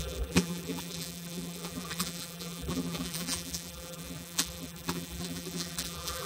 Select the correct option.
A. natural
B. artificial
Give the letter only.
B